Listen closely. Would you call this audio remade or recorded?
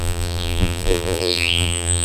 remade